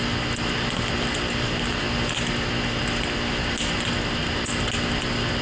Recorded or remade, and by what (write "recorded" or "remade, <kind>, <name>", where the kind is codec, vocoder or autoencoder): recorded